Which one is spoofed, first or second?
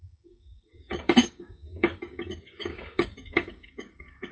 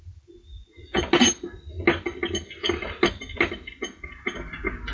first